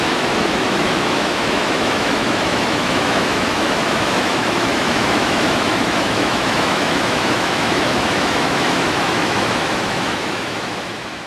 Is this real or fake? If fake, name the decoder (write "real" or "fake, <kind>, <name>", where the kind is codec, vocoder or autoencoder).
fake, autoencoder, DAC-VAE